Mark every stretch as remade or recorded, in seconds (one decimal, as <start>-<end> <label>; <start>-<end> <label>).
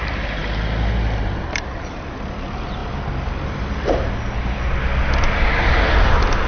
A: 0.0-6.5 recorded